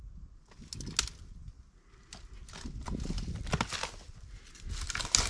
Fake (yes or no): no